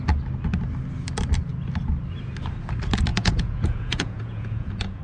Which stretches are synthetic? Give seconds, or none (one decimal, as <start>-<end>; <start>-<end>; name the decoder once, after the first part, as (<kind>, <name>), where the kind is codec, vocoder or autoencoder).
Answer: 3.1-5.0 (vocoder, Vocos)